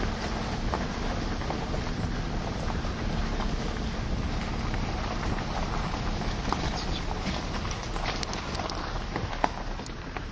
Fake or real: real